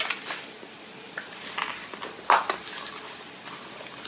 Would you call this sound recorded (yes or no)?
yes